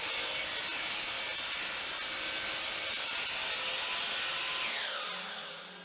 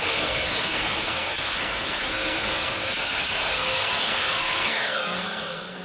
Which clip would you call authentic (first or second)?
first